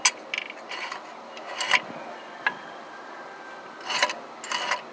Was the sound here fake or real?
real